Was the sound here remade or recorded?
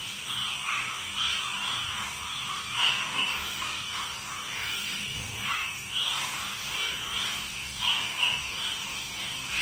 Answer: remade